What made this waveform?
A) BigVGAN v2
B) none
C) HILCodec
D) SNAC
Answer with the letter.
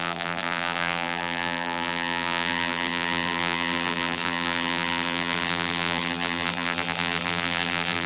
A